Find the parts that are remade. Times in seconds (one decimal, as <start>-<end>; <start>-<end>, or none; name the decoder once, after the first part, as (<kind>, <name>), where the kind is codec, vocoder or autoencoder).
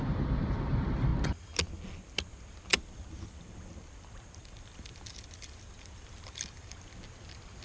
2.7-3.7 (vocoder, BigVGAN v2); 4.4-6.7